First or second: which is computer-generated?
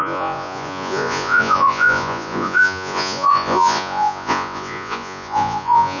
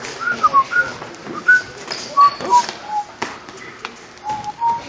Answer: first